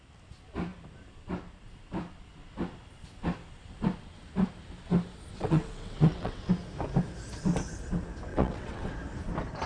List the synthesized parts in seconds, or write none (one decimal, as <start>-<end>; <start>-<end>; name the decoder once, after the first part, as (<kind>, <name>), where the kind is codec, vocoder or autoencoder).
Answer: 5.3-6.5 (vocoder, WaveNeXt); 8.3-8.9